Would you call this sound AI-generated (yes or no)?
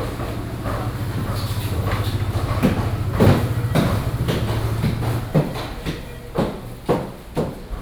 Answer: no